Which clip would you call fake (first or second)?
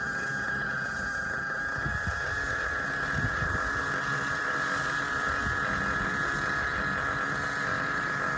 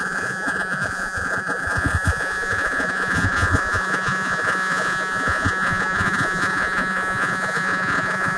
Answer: second